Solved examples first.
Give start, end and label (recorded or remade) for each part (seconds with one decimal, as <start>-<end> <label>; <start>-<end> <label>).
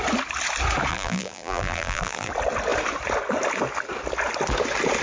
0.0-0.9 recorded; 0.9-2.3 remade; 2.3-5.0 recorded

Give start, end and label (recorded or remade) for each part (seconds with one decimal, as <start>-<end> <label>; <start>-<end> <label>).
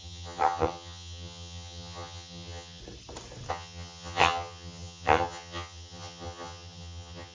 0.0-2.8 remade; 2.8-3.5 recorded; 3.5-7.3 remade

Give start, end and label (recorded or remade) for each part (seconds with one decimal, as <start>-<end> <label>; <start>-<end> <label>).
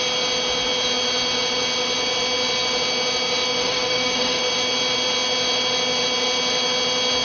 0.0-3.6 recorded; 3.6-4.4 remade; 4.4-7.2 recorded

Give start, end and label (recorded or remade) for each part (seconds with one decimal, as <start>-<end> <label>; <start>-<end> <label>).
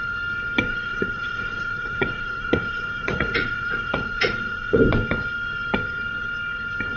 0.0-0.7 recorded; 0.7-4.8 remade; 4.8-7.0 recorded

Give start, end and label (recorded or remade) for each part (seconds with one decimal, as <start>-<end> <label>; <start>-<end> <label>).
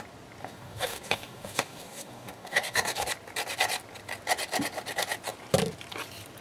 0.0-0.4 recorded; 0.4-3.1 remade; 3.1-6.4 recorded